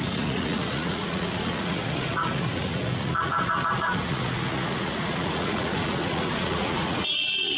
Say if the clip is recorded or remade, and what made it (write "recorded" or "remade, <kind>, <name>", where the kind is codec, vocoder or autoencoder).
remade, vocoder, Vocos